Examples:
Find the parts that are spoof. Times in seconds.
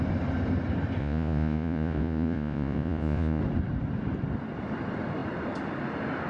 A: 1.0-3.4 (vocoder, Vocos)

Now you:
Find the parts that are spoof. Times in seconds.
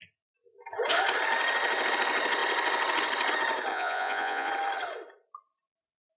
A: 3.7-4.5 (vocoder, Vocos)